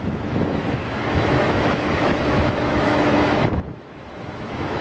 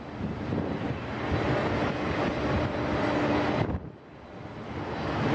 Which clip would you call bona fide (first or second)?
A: second